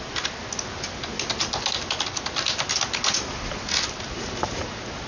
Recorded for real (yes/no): yes